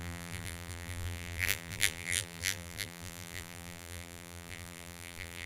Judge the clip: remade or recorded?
remade